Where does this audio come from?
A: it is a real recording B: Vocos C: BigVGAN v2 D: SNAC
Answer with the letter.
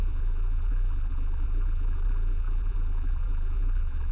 C